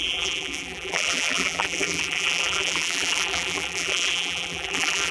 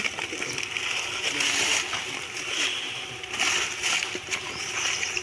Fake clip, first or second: first